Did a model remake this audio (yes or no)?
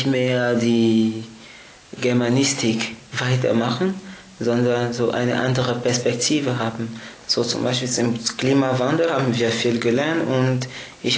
no